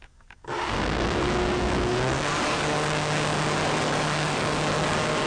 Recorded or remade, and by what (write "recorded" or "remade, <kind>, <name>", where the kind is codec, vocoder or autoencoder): remade, codec, DAC